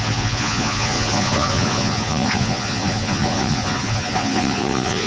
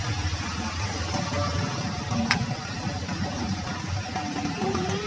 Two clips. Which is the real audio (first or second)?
second